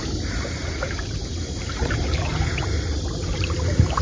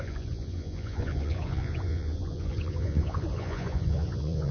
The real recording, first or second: first